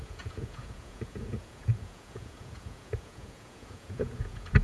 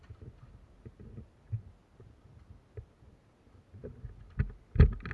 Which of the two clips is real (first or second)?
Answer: second